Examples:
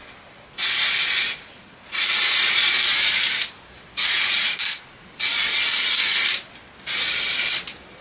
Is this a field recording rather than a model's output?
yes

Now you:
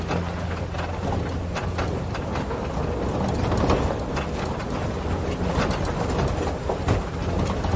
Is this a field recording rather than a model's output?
yes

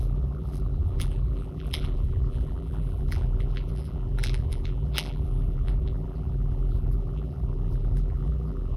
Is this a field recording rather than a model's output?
no